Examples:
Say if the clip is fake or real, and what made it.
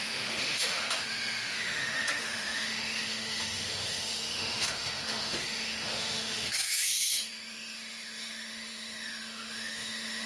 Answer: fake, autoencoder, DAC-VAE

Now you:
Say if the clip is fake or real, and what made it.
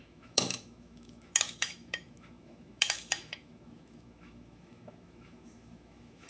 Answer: fake, autoencoder, DAC-VAE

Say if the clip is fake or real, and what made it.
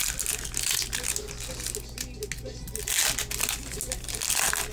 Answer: real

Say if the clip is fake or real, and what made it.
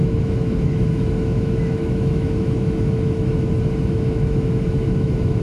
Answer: fake, autoencoder, DAC-VAE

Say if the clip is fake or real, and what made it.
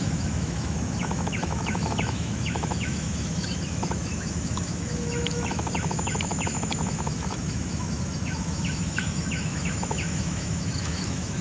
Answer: fake, autoencoder, DAC-VAE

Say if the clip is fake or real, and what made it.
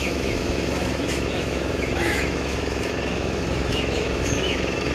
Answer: fake, autoencoder, DAC-VAE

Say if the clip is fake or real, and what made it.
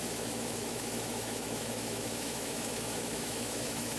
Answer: fake, autoencoder, DAC-VAE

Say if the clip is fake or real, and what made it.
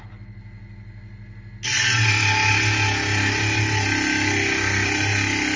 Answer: real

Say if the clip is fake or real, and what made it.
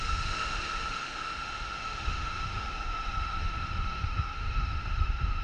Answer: fake, autoencoder, DAC-VAE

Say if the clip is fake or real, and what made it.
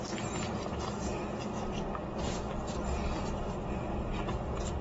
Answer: real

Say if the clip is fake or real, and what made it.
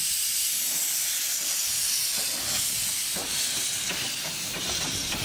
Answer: real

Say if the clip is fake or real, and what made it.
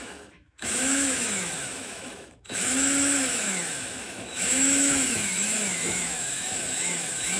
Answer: fake, autoencoder, DAC-VAE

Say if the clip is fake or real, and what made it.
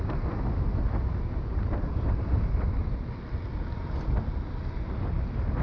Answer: real